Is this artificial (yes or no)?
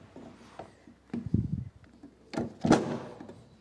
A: no